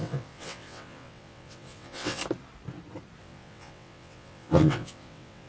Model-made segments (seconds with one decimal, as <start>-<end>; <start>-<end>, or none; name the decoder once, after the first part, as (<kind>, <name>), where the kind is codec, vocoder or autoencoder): 0.0-2.2 (vocoder, WaveNeXt); 3.2-5.5